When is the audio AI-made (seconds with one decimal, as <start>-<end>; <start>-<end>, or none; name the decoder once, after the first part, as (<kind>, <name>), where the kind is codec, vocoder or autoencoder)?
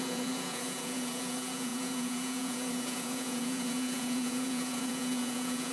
0.0-5.7 (vocoder, Vocos)